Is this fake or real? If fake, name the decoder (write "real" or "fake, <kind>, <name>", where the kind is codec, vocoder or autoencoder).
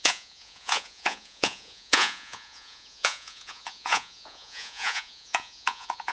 fake, vocoder, Vocos